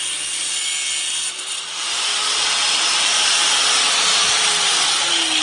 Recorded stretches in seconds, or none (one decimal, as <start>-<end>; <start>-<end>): 0.0-5.4